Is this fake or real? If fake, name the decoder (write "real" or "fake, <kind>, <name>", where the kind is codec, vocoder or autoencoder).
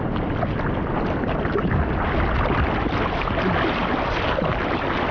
real